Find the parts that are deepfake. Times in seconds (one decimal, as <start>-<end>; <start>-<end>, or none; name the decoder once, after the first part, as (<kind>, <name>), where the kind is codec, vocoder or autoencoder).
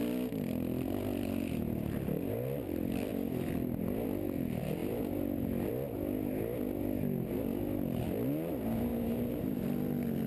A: 8.9-9.6 (vocoder, BigVGAN v2)